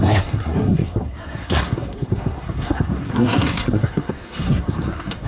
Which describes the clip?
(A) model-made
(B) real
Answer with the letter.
A